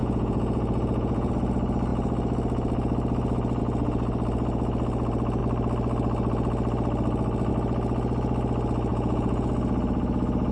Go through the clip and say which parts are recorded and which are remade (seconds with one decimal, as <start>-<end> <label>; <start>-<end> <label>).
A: 0.0-1.3 remade; 1.3-8.9 recorded; 8.9-9.5 remade; 9.5-10.5 recorded